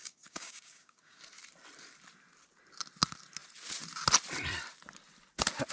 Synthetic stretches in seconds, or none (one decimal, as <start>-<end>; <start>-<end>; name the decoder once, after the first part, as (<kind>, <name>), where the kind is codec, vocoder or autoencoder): 0.0-1.2 (codec, DAC)

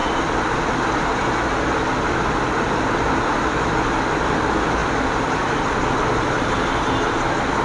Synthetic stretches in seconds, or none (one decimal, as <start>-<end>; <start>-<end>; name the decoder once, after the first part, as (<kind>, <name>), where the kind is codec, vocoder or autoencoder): none

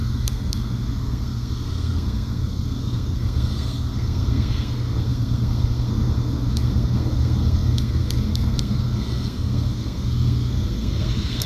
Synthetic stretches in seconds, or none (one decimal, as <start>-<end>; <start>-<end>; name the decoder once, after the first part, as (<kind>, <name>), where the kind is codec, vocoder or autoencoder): 0.0-11.5 (codec, SNAC)

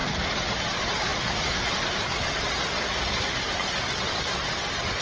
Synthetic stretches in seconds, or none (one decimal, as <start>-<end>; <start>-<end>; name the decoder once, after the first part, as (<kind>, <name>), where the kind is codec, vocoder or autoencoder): none

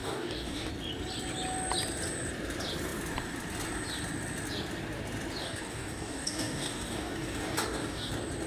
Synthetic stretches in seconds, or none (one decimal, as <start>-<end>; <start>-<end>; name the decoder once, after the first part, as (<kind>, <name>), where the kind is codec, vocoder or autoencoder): 0.0-0.7 (codec, DAC); 5.4-8.1

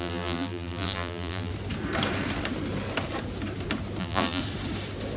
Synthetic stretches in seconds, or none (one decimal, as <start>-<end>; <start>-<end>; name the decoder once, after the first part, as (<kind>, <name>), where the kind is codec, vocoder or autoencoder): 0.0-1.5 (vocoder, BigVGAN v2); 4.0-4.4

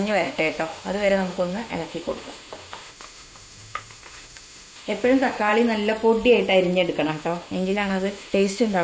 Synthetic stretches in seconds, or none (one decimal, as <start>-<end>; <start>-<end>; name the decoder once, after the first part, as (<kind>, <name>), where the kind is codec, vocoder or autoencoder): 0.0-5.5 (autoencoder, DAC-VAE); 7.1-8.8